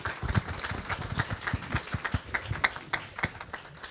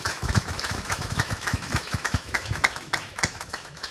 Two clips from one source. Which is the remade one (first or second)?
second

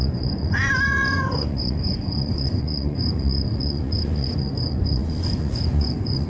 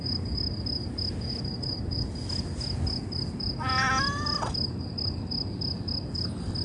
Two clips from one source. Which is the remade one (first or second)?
first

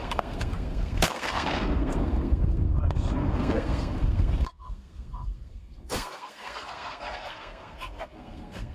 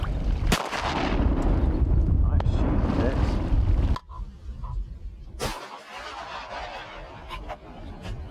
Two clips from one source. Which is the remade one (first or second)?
first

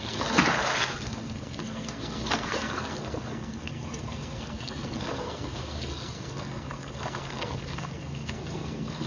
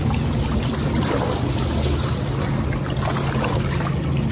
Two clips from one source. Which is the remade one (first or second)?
first